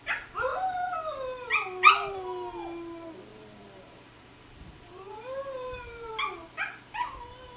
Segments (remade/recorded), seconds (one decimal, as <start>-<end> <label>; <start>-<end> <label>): 0.0-3.3 recorded; 3.3-6.1 remade; 6.1-7.6 recorded